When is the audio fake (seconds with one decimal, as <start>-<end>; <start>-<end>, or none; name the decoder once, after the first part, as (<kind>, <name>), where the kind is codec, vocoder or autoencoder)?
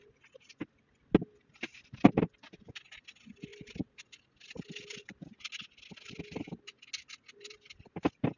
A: none